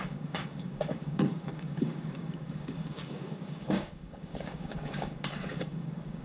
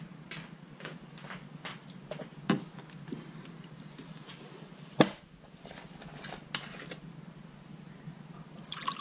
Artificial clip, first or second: first